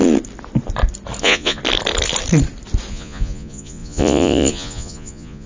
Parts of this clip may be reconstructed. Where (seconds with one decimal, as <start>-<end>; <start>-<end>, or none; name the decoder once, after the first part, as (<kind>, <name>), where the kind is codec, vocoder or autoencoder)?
1.2-1.6 (vocoder, Vocos); 2.9-5.5